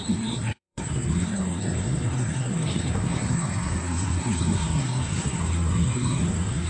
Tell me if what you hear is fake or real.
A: fake